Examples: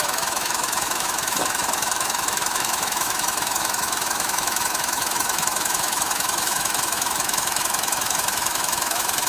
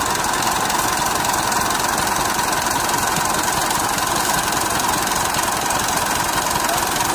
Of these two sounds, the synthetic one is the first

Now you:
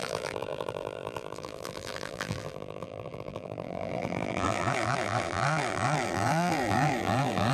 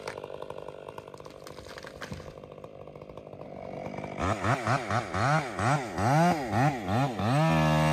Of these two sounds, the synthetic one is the first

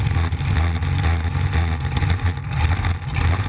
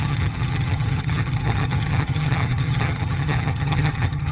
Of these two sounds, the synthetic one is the second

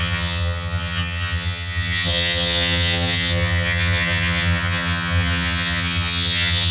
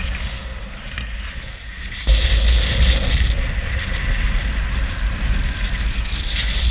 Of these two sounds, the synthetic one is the first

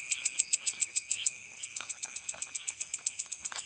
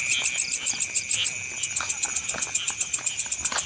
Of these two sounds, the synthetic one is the first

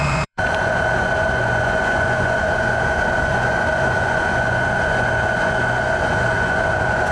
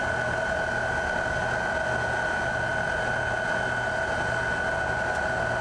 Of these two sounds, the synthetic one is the first